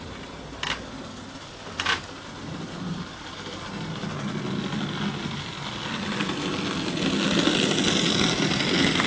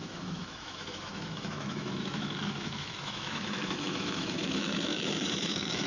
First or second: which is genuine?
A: first